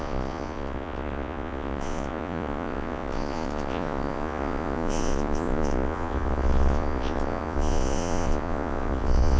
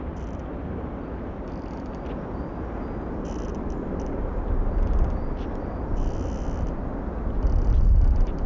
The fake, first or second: first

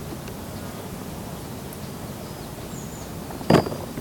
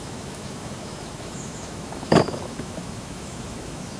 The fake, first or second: second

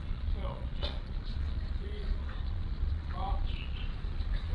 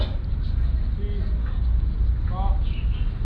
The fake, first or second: first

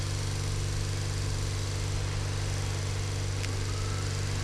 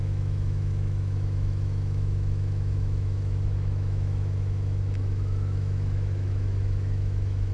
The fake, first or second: second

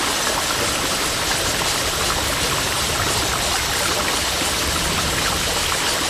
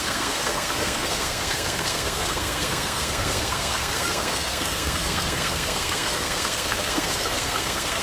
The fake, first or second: second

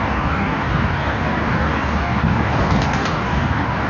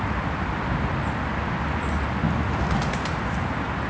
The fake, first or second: first